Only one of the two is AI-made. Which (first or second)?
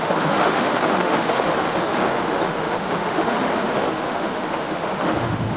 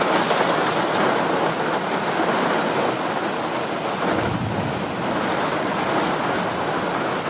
first